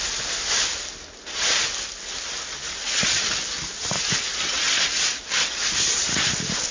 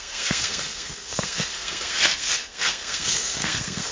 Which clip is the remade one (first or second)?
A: second